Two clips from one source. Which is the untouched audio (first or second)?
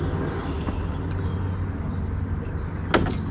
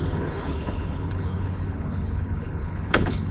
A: first